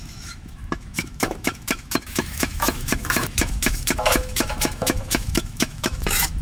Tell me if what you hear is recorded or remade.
remade